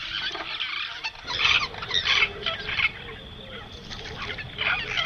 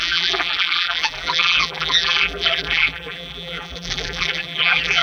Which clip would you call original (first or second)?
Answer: first